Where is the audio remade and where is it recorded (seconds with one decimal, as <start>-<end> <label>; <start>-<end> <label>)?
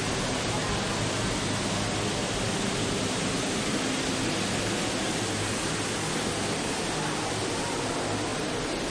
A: 0.0-8.9 recorded